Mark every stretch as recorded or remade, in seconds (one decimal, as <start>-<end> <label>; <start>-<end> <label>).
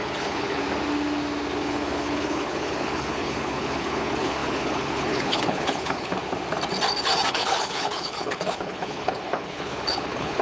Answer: 0.0-0.6 remade; 0.6-1.6 recorded; 1.6-6.1 remade; 6.1-7.3 recorded; 7.3-10.4 remade